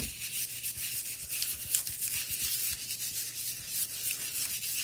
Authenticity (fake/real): real